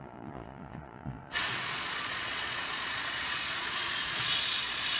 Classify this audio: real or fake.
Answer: fake